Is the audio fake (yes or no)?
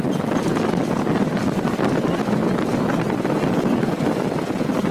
no